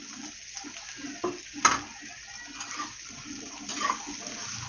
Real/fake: real